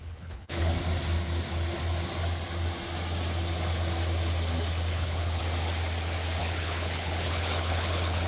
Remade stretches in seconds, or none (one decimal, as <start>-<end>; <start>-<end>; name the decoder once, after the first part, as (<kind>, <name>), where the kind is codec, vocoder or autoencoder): 0.0-0.7 (codec, HILCodec); 4.9-5.4; 6.4-8.3